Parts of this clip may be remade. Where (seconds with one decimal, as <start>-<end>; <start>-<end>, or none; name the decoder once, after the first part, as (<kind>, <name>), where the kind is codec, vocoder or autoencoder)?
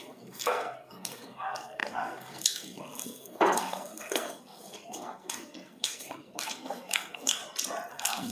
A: 0.0-7.4 (codec, SNAC); 7.9-8.3